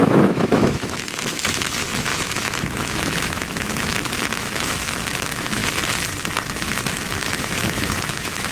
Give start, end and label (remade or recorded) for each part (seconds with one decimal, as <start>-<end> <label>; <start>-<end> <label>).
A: 0.0-5.6 remade; 5.6-6.5 recorded; 6.5-8.5 remade